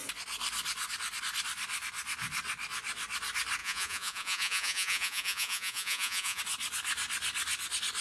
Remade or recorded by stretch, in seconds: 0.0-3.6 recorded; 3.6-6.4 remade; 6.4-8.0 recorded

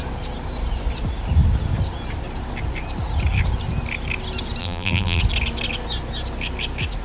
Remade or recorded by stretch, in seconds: 0.0-4.6 recorded; 4.6-5.2 remade; 5.2-7.0 recorded

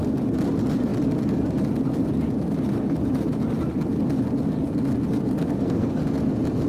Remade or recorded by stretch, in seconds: 0.0-5.4 recorded; 5.4-5.9 remade; 5.9-6.7 recorded